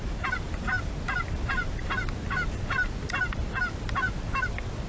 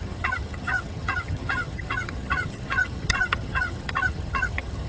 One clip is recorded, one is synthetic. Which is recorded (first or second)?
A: first